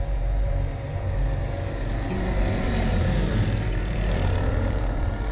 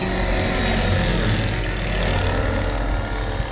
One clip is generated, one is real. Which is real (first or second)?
second